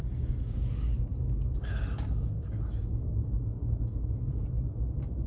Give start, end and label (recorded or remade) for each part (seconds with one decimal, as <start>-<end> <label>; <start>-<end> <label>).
0.0-5.3 remade